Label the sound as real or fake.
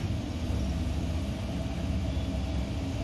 real